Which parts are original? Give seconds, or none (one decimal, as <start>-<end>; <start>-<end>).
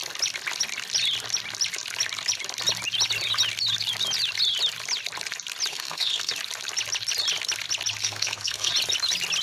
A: 0.0-5.7; 6.3-8.0; 8.7-9.4